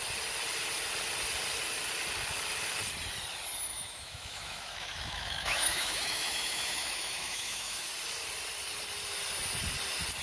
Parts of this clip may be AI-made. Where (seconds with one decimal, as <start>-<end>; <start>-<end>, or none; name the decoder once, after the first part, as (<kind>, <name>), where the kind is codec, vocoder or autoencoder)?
3.7-7.9 (autoencoder, DAC-VAE)